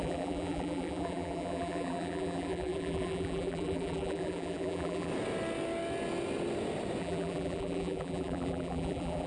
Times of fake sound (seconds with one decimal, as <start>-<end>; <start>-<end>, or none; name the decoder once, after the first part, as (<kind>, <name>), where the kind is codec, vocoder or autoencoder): 0.0-5.1 (vocoder, BigVGAN v2); 7.0-9.3